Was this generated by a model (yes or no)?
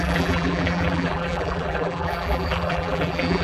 yes